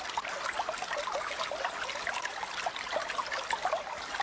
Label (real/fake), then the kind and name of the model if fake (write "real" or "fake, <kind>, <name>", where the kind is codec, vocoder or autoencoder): real